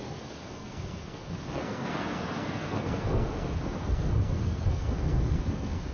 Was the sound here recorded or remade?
remade